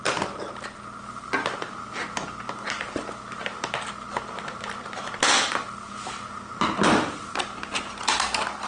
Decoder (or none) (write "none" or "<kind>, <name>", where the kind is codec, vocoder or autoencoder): none